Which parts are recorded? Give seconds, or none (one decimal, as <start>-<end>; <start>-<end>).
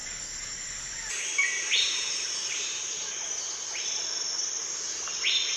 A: 3.4-5.6